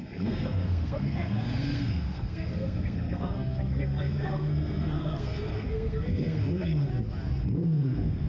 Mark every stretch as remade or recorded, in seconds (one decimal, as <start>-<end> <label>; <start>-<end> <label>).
0.0-6.9 remade; 6.9-7.4 recorded; 7.4-8.3 remade